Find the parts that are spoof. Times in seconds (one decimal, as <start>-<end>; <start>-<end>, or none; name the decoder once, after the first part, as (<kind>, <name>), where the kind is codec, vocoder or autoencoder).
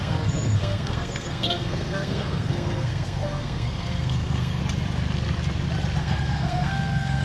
0.0-4.6 (codec, SNAC); 6.0-7.2